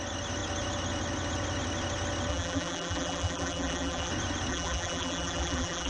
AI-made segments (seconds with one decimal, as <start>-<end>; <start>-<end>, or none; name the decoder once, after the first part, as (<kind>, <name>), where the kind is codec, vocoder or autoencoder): 2.3-4.1 (vocoder, BigVGAN v2); 4.5-5.9